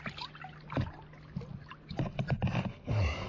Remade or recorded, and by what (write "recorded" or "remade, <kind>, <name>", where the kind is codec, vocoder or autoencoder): recorded